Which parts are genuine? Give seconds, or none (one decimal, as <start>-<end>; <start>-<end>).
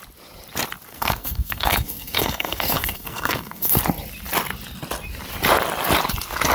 0.0-0.9; 3.8-6.5